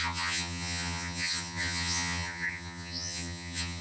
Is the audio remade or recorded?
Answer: remade